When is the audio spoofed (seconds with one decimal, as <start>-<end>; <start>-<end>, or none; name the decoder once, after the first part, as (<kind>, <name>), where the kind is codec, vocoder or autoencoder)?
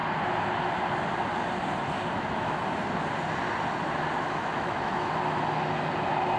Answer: 2.1-2.6 (autoencoder, DAC-VAE); 4.2-5.1